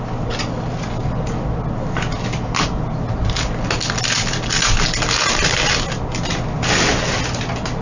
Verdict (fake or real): real